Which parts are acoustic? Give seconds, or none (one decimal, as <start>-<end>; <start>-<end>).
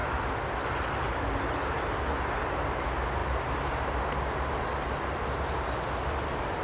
0.0-6.6